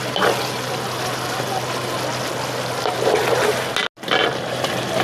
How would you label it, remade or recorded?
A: recorded